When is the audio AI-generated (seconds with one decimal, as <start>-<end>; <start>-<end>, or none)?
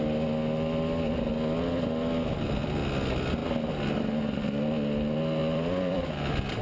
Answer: 5.4-6.1